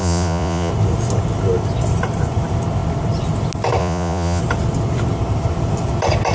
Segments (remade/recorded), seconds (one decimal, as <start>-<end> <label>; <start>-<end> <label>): 0.0-0.7 remade; 0.7-3.8 recorded; 3.8-4.4 remade; 4.4-6.3 recorded